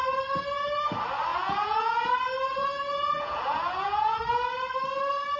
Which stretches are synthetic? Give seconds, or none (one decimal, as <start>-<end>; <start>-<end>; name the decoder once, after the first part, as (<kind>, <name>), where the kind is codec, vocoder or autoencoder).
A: 1.3-2.1 (vocoder, Vocos); 2.5-4.2